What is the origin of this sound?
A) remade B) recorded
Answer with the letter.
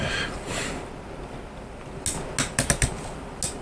B